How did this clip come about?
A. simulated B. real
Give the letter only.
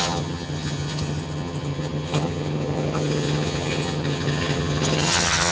A